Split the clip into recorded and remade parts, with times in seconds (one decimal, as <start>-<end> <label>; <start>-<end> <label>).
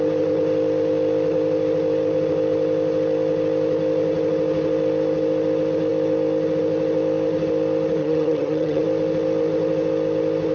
0.0-8.0 recorded; 8.0-8.8 remade; 8.8-10.5 recorded